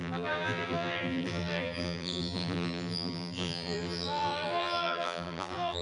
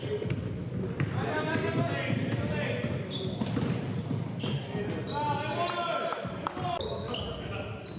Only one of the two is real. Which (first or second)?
second